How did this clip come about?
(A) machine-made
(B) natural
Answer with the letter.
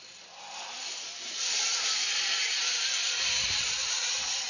B